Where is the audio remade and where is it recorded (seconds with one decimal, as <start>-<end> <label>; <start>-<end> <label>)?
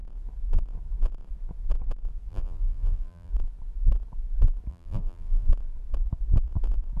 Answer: 0.0-2.3 recorded; 2.3-3.3 remade; 3.3-4.7 recorded; 4.7-5.5 remade; 5.5-7.0 recorded